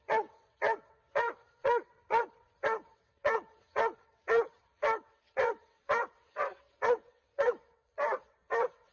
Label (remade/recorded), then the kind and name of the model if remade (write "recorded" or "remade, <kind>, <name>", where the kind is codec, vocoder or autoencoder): remade, vocoder, WaveNeXt